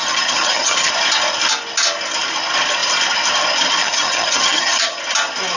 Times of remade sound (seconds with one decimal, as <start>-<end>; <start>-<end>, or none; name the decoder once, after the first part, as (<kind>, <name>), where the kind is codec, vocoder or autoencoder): 0.0-0.9 (vocoder, HiFi-GAN); 3.8-5.0